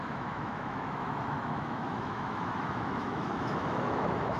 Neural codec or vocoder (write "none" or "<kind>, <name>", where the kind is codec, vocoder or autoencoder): autoencoder, DAC-VAE